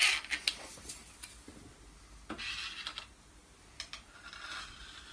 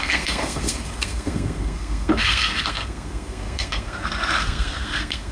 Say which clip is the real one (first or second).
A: first